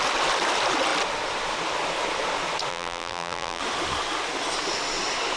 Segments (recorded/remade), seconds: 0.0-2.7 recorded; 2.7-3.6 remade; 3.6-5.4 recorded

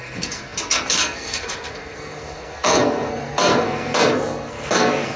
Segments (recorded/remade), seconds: 0.0-5.2 remade

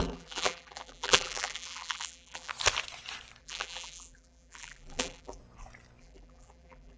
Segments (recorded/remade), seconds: 0.0-2.5 remade; 2.5-3.4 recorded; 3.4-5.4 remade; 5.4-6.0 recorded; 6.0-7.0 remade

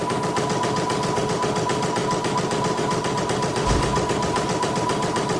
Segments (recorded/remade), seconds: 0.0-5.4 recorded